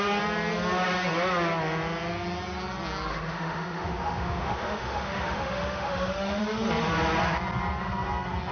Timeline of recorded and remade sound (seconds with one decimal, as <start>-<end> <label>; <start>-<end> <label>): 0.0-3.1 recorded; 3.1-6.4 remade; 6.4-8.5 recorded